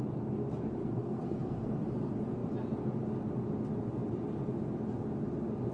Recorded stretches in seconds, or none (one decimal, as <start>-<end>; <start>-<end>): 0.0-0.8; 1.7-5.7